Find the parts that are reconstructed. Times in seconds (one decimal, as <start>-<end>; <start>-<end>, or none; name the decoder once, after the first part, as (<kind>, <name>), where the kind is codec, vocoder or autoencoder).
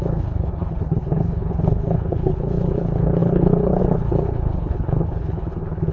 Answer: 0.0-5.9 (codec, HILCodec)